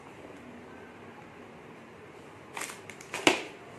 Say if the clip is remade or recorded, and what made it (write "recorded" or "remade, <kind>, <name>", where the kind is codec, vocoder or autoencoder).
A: recorded